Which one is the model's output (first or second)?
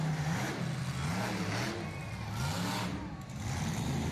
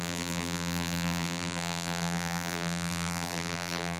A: second